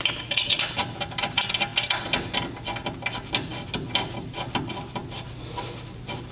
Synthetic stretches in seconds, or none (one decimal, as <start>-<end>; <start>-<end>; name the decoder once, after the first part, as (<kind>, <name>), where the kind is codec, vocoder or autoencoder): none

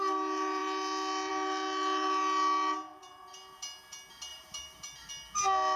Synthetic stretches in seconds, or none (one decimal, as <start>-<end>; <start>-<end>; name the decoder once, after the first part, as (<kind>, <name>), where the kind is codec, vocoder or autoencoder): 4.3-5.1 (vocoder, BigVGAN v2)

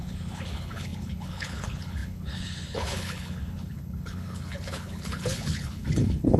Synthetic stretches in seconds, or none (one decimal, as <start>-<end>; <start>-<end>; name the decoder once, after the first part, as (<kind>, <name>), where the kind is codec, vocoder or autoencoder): 0.0-6.4 (codec, HILCodec)

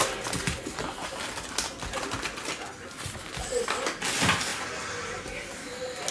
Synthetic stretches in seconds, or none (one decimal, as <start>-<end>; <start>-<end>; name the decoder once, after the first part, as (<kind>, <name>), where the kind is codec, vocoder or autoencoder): none